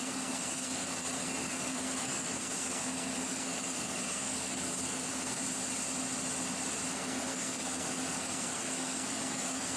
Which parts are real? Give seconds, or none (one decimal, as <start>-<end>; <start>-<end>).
5.4-6.9